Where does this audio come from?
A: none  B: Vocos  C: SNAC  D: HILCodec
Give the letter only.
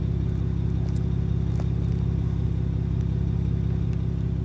A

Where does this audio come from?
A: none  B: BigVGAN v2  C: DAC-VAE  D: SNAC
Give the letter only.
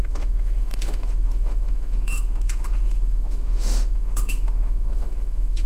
C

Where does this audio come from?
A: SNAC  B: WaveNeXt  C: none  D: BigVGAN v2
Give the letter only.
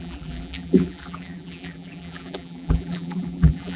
D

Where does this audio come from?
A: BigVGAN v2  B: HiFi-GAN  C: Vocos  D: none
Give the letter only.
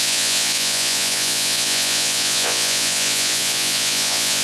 C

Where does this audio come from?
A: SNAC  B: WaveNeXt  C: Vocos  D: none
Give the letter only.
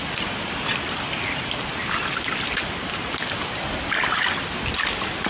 D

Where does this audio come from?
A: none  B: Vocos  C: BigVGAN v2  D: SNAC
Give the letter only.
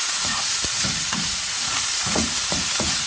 B